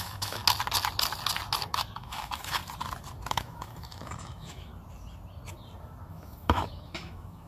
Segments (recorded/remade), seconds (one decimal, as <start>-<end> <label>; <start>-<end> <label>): 0.0-0.4 remade; 0.4-1.7 recorded; 1.7-2.6 remade; 2.6-3.3 recorded; 3.3-4.7 remade; 4.7-6.1 recorded; 6.1-7.5 remade